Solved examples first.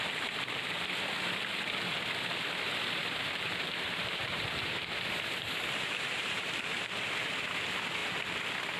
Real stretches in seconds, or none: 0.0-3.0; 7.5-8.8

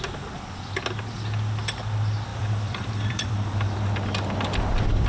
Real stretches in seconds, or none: 0.0-2.3; 3.8-5.1

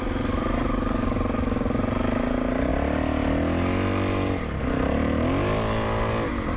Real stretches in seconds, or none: 0.0-6.6

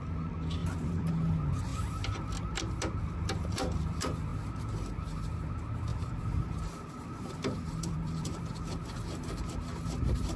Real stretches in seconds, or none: 0.0-0.6; 1.1-5.9; 8.4-10.4